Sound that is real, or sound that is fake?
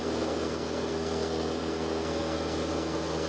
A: fake